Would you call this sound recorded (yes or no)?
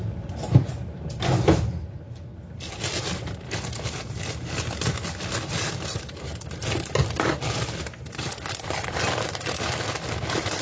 yes